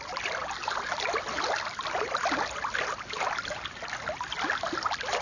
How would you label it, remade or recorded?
recorded